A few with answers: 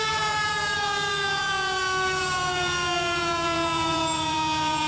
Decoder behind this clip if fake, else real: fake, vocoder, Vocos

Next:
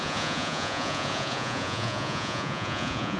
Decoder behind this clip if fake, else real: fake, vocoder, Vocos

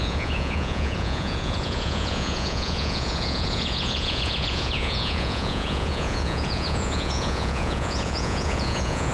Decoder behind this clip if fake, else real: fake, vocoder, Vocos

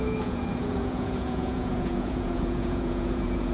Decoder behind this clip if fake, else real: fake, vocoder, Vocos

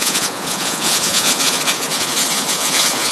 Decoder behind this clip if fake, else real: fake, vocoder, Vocos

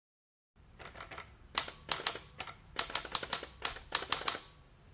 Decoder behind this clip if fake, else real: real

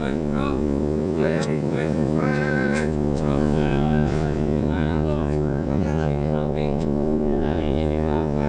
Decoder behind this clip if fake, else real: fake, vocoder, Vocos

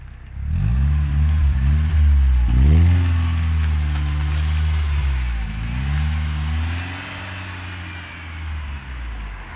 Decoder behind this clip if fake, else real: real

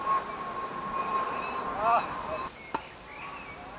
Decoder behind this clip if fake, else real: real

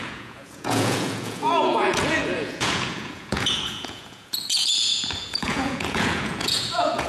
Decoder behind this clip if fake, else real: fake, vocoder, Vocos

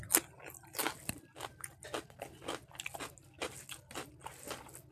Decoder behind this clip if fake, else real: real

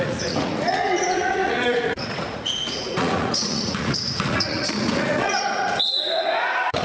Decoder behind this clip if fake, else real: fake, vocoder, Vocos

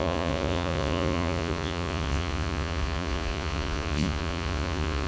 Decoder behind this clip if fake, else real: fake, vocoder, Vocos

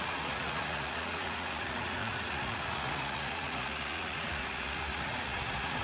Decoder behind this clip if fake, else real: fake, vocoder, Vocos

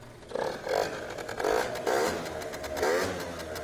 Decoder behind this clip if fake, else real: real